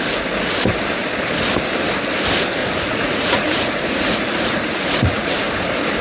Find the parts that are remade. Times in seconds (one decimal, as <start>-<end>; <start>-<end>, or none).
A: 2.6-5.3